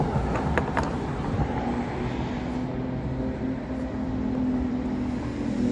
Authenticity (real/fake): real